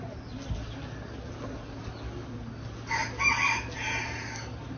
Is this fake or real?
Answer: real